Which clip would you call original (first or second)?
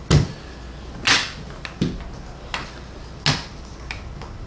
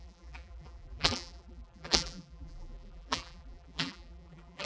first